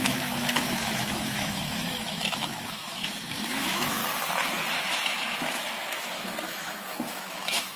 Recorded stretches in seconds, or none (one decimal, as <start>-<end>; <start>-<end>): 4.0-4.9

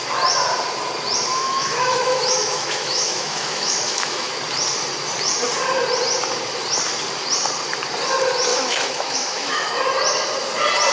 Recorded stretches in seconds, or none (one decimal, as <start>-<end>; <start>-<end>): 0.0-1.3; 4.3-8.5; 9.7-10.9

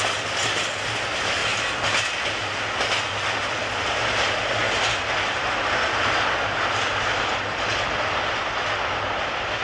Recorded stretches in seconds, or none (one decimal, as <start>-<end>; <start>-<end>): 0.0-9.6